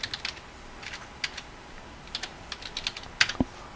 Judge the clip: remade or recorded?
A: recorded